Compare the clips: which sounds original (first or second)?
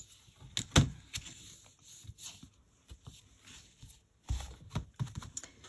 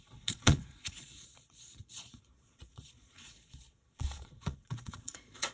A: first